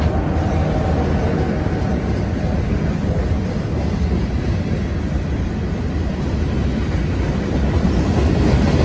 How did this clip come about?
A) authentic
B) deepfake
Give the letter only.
A